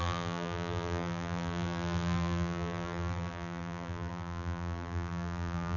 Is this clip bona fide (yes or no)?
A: no